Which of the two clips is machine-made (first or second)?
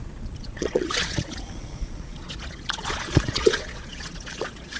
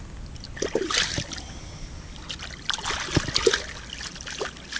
first